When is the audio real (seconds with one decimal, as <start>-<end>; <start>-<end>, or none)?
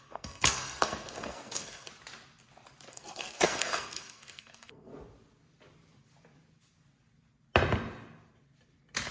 1.9-2.9; 4.9-9.1